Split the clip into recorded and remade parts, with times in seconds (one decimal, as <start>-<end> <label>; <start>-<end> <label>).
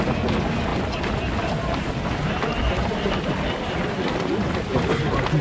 0.0-5.4 recorded